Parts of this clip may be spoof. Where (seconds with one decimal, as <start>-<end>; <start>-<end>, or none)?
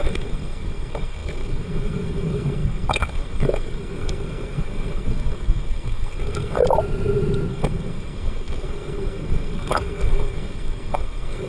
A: 0.0-6.6; 7.5-11.5